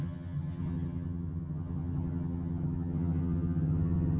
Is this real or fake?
fake